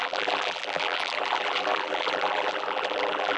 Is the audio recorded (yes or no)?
no